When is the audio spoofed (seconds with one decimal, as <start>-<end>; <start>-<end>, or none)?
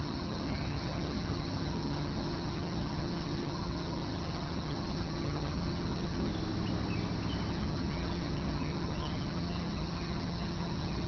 0.0-6.3; 7.5-11.1